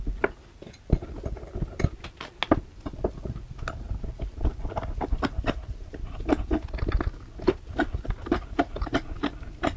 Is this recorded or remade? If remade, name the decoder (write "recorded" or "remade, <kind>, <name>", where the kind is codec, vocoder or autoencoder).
recorded